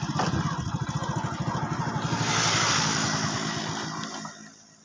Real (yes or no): yes